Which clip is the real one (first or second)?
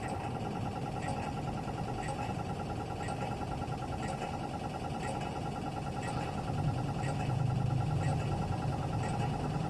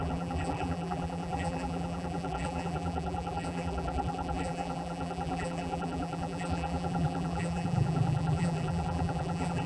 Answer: first